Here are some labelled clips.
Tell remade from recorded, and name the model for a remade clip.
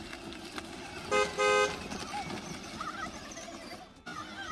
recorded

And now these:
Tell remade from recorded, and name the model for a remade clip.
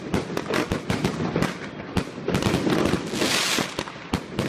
recorded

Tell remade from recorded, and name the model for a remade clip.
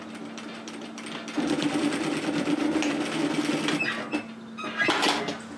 recorded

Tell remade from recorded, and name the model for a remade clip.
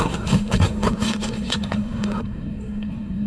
remade, codec, SNAC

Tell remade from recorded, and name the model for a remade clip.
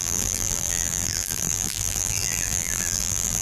remade, vocoder, BigVGAN v2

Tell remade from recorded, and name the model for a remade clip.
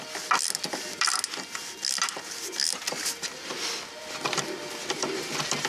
recorded